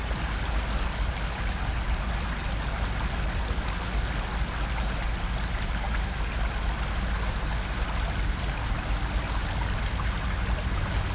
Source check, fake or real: real